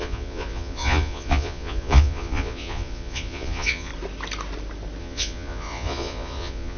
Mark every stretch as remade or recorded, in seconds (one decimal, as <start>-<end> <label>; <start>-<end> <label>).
0.0-3.9 remade; 3.9-5.0 recorded; 5.0-6.8 remade